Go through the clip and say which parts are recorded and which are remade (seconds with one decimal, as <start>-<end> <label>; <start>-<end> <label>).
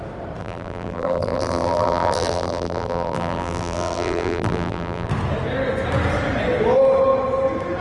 0.0-0.4 recorded; 0.4-5.1 remade; 5.1-7.8 recorded